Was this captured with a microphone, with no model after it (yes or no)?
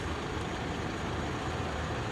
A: no